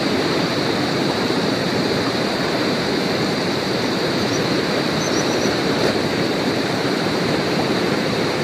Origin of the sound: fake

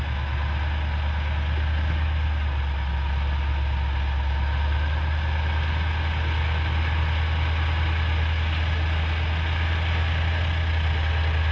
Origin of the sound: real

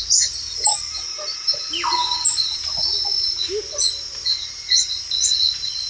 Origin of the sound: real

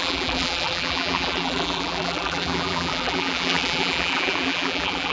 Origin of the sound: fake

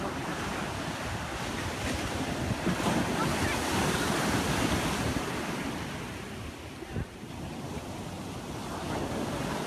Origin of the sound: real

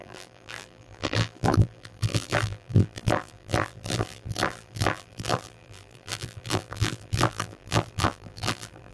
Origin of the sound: fake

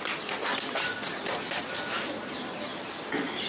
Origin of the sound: real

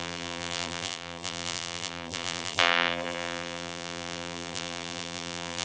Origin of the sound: fake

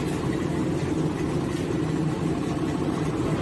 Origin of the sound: real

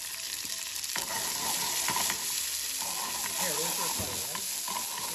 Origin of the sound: real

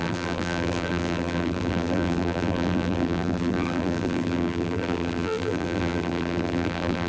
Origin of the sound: fake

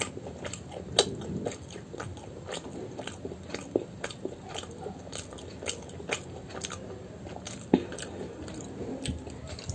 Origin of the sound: real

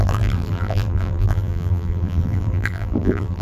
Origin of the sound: fake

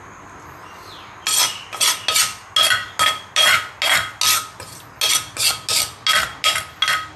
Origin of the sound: real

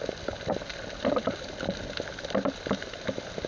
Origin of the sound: fake